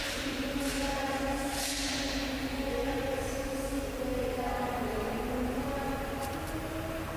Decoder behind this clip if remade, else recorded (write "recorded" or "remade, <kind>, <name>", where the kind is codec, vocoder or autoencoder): recorded